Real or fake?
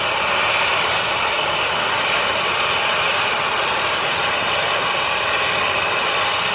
real